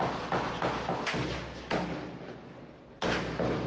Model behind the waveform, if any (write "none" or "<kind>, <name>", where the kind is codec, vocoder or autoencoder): none